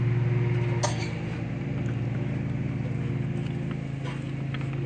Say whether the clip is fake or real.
real